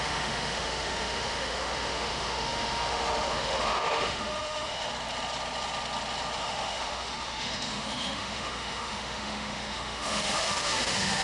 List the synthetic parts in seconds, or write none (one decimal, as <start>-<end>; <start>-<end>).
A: 0.0-4.9; 6.4-11.2